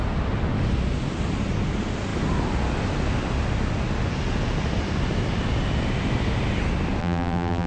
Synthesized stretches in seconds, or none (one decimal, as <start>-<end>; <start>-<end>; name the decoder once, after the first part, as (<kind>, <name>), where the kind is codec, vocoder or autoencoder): 7.0-7.7 (vocoder, BigVGAN v2)